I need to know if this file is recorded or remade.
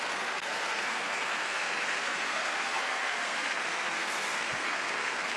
remade